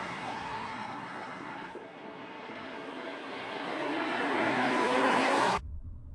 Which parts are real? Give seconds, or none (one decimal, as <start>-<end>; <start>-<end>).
none